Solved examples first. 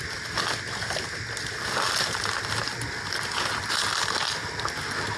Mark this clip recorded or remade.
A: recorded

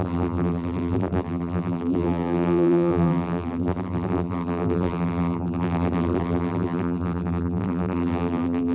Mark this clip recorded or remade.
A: remade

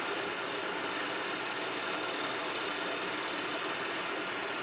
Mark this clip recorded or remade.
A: remade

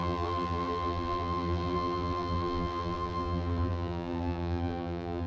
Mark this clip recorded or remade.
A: remade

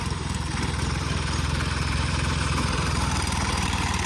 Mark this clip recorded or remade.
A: remade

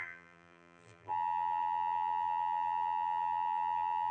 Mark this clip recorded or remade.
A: remade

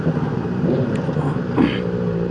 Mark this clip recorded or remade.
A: remade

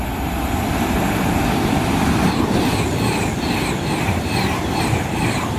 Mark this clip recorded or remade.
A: recorded